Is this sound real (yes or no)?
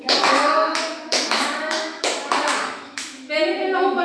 no